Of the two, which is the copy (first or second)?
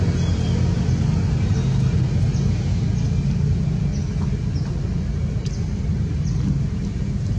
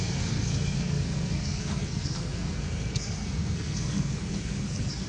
second